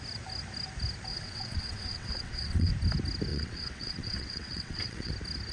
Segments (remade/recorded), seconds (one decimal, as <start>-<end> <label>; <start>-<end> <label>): 0.0-1.1 recorded; 1.1-2.7 remade; 2.7-3.3 recorded; 3.3-5.1 remade; 5.1-5.5 recorded